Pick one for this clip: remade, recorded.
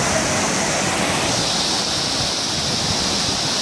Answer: recorded